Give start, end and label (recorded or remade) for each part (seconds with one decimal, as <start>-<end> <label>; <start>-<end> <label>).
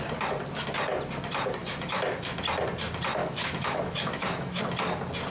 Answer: 0.0-1.6 recorded; 1.6-2.4 remade; 2.4-3.2 recorded; 3.2-4.6 remade; 4.6-5.3 recorded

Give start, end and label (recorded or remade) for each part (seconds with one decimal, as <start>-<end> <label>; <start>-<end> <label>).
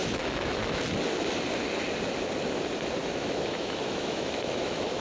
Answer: 0.0-0.8 remade; 0.8-3.0 recorded; 3.0-5.0 remade